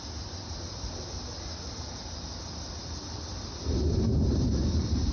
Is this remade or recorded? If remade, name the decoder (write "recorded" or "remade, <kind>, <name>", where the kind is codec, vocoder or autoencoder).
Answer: recorded